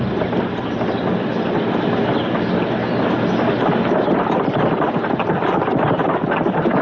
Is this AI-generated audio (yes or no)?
no